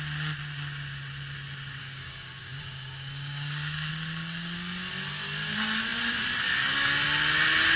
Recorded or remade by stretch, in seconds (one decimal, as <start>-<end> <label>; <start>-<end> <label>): 0.0-1.8 recorded; 1.8-3.9 remade; 3.9-7.8 recorded